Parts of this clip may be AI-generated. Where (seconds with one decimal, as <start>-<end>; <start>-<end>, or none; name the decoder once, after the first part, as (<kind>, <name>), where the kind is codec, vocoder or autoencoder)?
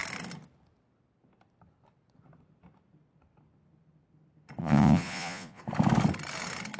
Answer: 4.6-5.6 (vocoder, Vocos)